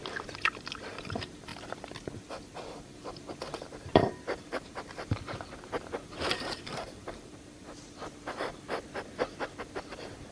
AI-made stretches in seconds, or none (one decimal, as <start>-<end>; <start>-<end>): 0.9-1.5; 2.2-8.0; 9.8-10.3